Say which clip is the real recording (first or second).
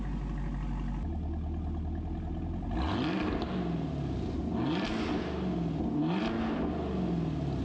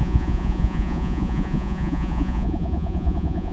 first